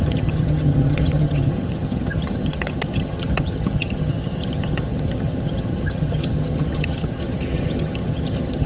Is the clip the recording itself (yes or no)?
no